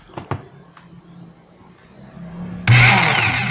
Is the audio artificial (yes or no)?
no